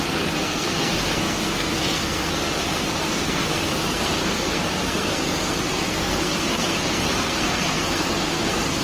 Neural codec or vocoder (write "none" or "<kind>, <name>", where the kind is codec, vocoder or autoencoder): codec, SNAC